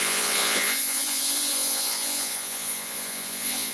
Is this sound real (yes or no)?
no